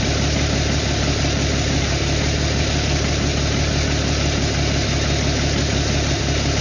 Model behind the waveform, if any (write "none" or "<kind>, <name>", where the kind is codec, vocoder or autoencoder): none